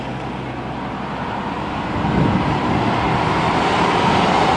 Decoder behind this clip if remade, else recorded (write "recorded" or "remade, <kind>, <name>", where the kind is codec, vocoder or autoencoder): recorded